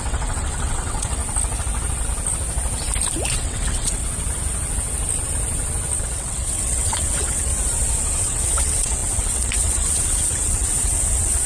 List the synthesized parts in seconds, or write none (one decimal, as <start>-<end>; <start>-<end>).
0.0-1.2; 3.3-4.0; 6.0-7.5; 8.2-11.5